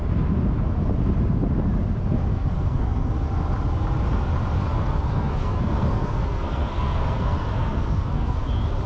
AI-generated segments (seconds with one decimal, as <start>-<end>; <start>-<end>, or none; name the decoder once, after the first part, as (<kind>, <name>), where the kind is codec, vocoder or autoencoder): 2.3-3.1 (codec, SNAC); 4.6-8.4